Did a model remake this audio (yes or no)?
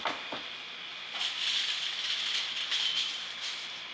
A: no